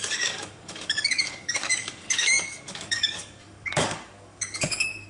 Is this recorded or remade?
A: remade